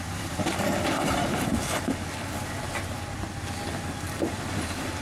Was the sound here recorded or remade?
recorded